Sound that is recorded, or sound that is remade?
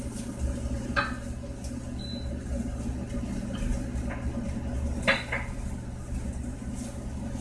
recorded